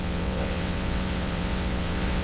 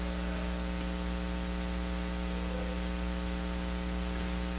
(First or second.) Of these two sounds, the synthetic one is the first